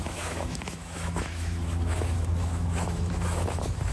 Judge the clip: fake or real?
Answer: fake